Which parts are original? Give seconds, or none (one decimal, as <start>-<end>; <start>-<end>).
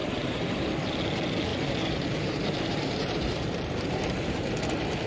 0.6-1.5; 4.5-5.1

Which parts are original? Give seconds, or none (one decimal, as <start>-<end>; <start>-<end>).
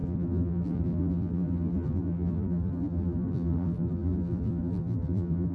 none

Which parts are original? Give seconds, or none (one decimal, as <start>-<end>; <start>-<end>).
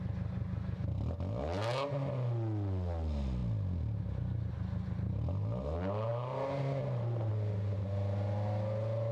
0.0-6.1; 7.3-9.1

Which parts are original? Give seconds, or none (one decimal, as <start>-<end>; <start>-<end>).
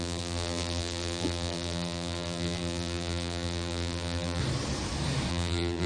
4.4-5.3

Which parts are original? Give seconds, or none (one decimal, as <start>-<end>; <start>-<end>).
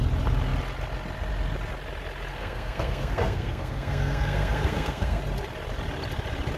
0.0-2.3; 5.2-6.6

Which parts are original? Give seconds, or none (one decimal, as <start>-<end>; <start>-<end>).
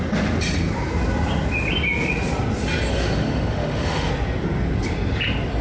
0.0-2.9; 4.1-5.6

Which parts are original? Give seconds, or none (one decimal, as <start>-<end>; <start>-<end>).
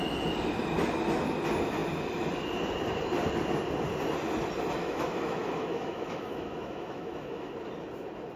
0.0-4.8; 7.5-8.4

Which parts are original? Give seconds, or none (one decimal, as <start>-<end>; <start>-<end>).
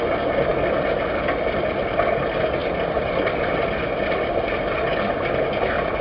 0.0-6.0